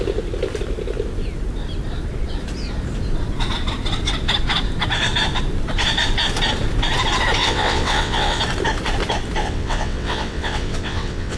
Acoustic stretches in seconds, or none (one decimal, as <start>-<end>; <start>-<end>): 0.0-7.4; 8.4-9.4